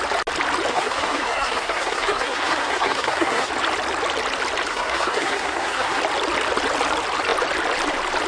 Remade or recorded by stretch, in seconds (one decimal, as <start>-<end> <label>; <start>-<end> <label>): 0.0-0.7 recorded; 0.7-3.5 remade; 3.5-4.7 recorded; 4.7-6.0 remade; 6.0-8.3 recorded